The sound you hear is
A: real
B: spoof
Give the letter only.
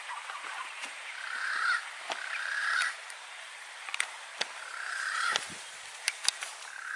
B